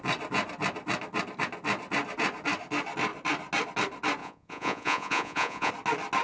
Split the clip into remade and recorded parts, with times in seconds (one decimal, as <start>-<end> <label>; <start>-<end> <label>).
0.0-4.2 recorded; 4.2-5.7 remade; 5.7-6.2 recorded